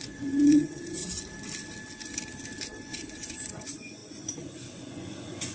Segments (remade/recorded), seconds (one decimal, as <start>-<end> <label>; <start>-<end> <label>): 0.0-1.0 remade; 1.0-2.9 recorded; 2.9-5.5 remade